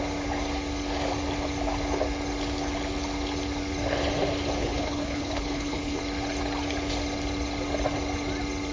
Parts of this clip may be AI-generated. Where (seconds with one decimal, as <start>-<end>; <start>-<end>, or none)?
4.6-6.0